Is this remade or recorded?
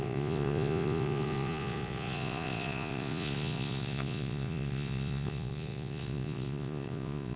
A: remade